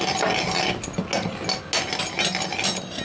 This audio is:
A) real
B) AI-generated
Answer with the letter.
A